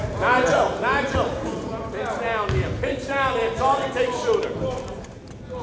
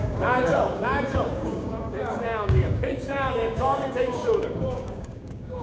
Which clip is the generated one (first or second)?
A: second